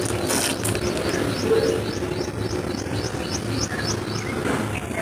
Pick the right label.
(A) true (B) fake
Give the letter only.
A